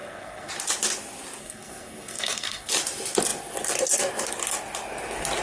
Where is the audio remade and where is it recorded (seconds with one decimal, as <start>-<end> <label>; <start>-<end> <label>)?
0.0-0.5 remade; 0.5-1.4 recorded; 1.4-2.7 remade; 2.7-5.4 recorded